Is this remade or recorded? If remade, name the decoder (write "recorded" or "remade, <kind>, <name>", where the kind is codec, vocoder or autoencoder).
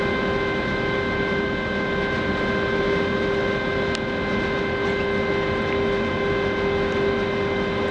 recorded